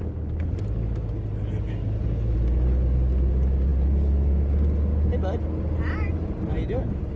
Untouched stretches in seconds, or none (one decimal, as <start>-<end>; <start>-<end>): 0.0-7.2